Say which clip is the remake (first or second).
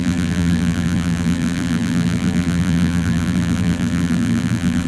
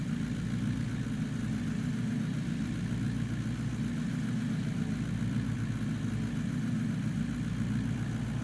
first